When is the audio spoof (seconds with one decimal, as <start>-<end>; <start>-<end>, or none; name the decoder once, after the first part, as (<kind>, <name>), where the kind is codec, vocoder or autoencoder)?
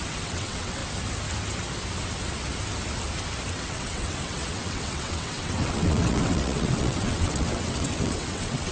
0.0-0.8 (vocoder, WaveNeXt); 3.5-8.7